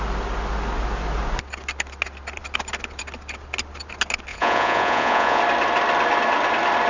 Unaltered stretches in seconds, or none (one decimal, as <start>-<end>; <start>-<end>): 0.0-4.3; 5.4-6.9